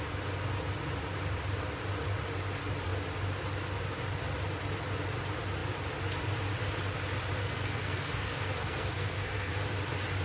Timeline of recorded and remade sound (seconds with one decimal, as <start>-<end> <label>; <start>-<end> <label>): 0.0-7.4 recorded; 7.4-9.5 remade; 9.5-10.2 recorded